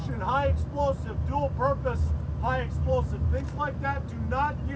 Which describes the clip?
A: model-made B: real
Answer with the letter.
B